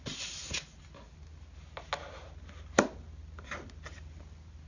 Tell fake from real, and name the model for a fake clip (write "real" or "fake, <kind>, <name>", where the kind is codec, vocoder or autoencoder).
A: real